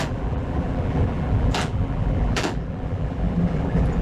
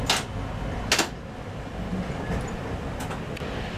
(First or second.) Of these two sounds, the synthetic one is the first